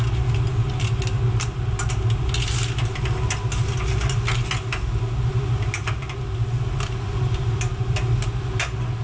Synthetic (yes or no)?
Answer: no